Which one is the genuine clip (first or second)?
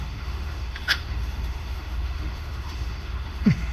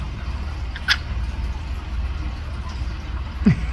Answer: second